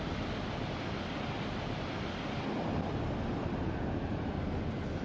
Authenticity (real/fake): real